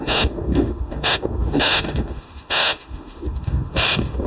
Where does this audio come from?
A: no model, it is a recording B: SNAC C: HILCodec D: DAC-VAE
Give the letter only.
D